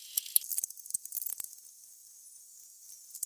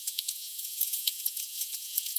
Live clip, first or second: first